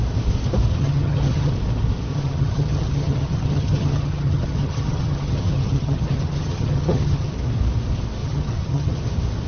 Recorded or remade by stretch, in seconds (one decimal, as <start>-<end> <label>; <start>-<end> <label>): 0.0-0.7 recorded; 0.7-1.5 remade; 1.5-2.1 recorded; 2.1-7.3 remade; 7.3-8.2 recorded; 8.2-9.0 remade; 9.0-9.5 recorded